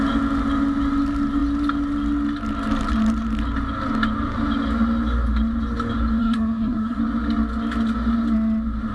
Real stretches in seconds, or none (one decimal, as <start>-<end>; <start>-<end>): 0.0-6.2; 7.0-8.9